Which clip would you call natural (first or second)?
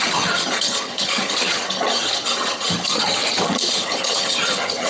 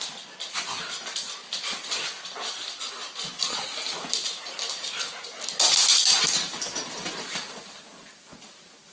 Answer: second